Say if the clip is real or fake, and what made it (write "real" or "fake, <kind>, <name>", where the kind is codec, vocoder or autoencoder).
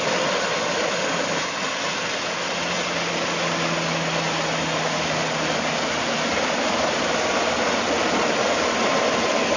real